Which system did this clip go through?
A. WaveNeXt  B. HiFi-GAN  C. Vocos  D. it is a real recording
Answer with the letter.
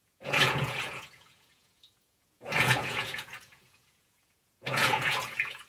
C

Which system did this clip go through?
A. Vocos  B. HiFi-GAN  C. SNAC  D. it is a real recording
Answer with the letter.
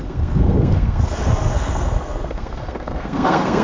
C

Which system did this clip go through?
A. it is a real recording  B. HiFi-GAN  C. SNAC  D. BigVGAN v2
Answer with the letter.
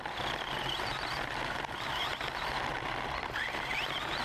A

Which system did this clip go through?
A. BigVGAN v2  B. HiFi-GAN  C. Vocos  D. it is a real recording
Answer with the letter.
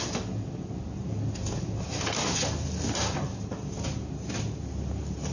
D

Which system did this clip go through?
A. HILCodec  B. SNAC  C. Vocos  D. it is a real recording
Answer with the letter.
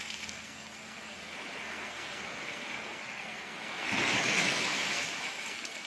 B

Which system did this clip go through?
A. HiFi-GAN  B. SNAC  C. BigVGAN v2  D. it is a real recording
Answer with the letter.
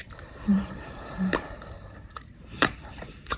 C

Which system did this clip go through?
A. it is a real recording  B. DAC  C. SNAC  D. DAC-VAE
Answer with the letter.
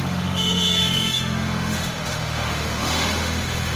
D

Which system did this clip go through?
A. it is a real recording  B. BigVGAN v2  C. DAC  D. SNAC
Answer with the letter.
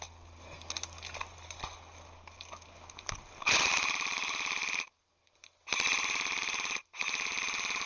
A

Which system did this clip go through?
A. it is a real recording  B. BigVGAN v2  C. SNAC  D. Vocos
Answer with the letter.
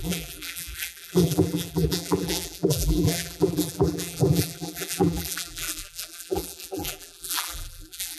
B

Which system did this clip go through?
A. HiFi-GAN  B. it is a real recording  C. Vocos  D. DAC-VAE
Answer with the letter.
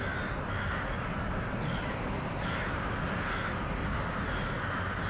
B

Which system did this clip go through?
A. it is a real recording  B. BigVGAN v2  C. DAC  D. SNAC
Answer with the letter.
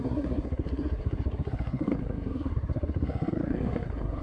D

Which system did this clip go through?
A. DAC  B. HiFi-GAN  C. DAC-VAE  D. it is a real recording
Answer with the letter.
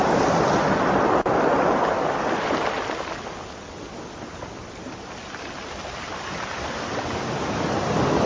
D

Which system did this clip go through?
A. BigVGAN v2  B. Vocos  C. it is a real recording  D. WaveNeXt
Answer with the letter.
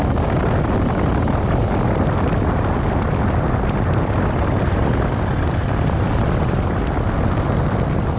C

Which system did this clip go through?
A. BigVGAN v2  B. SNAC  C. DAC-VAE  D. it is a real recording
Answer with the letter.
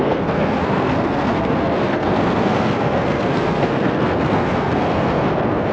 B